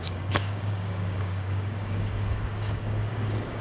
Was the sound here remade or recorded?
remade